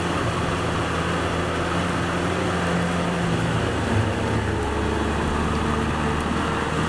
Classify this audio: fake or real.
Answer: real